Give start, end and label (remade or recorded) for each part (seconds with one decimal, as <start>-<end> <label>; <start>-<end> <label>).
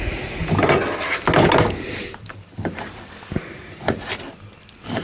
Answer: 0.0-0.4 remade; 0.4-3.4 recorded; 3.4-4.1 remade; 4.1-5.0 recorded